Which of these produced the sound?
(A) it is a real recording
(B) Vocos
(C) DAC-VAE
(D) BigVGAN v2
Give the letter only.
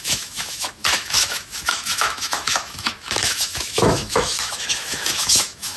C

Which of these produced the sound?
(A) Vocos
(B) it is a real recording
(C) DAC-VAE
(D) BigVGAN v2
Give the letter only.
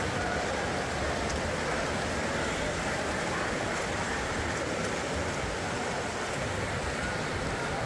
B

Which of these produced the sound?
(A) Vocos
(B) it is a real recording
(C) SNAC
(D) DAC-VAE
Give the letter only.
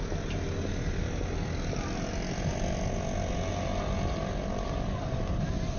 B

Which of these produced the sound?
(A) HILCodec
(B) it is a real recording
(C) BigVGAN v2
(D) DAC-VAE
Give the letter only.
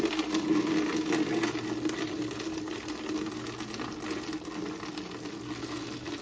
B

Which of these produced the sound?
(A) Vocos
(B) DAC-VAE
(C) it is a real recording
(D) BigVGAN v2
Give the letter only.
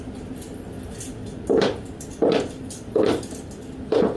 C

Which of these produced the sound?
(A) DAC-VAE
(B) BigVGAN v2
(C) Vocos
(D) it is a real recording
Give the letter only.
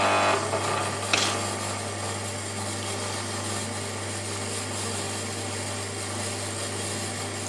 D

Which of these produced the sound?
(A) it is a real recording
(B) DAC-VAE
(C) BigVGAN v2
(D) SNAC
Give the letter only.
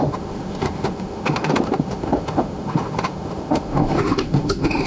B